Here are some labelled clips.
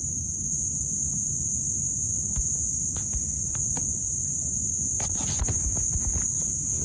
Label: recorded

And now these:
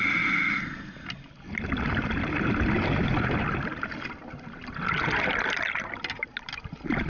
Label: recorded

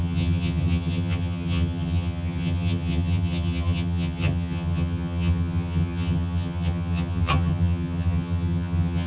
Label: remade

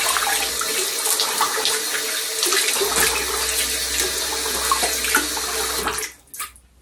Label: recorded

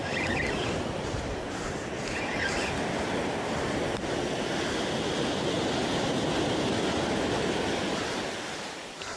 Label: recorded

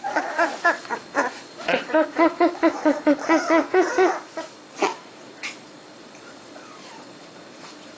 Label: remade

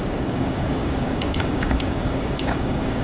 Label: remade